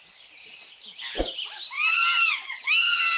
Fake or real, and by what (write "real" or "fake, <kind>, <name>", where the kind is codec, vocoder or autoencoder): real